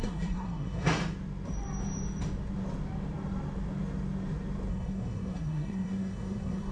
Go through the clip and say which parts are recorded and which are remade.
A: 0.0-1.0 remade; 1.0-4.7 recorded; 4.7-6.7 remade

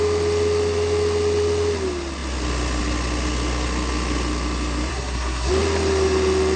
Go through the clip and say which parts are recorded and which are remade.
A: 0.0-4.9 recorded; 4.9-5.5 remade; 5.5-6.6 recorded

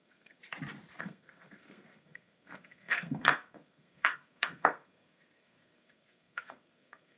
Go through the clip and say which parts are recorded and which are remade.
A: 0.0-0.4 remade; 0.4-1.0 recorded; 1.0-7.2 remade

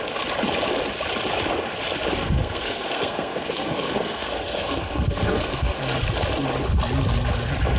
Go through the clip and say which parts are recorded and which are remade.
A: 0.0-2.2 recorded; 2.2-5.8 remade; 5.8-7.8 recorded

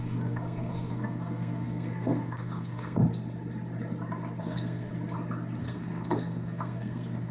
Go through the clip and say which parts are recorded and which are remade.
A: 0.0-3.0 remade; 3.0-4.4 recorded; 4.4-4.9 remade; 4.9-5.6 recorded; 5.6-7.3 remade

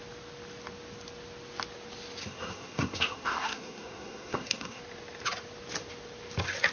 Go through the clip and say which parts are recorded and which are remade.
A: 0.0-2.2 recorded; 2.2-4.8 remade; 4.8-6.7 recorded

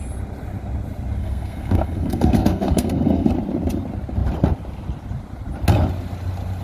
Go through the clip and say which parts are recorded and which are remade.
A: 0.0-1.2 recorded; 1.2-3.3 remade; 3.3-6.6 recorded

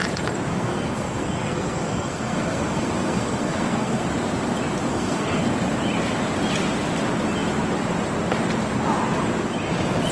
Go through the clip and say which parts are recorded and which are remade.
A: 0.0-0.5 recorded; 0.5-4.1 remade; 4.1-4.9 recorded; 4.9-5.4 remade; 5.4-10.1 recorded